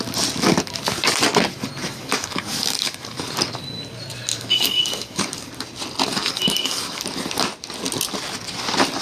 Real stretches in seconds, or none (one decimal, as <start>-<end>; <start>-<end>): 0.0-1.8; 3.3-4.3; 5.5-6.3; 7.0-9.0